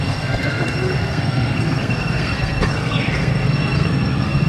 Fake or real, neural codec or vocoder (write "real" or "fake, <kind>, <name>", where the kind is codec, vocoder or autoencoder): fake, codec, SNAC